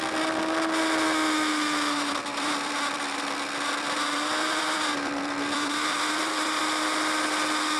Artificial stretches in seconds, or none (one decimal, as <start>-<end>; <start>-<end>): 2.3-6.6